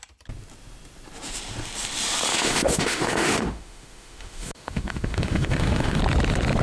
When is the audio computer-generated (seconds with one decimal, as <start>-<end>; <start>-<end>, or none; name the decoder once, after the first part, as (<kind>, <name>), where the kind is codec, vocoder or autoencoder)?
2.3-6.0 (autoencoder, DAC-VAE)

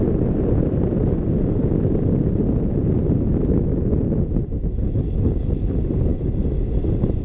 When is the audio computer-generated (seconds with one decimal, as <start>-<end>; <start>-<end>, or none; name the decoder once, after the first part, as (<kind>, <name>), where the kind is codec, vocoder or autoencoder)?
none

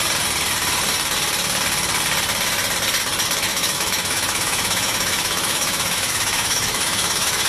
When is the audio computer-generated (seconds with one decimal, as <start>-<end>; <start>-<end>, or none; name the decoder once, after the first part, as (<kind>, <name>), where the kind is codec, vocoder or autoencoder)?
3.5-7.5 (autoencoder, DAC-VAE)